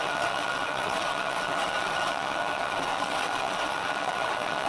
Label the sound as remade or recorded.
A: remade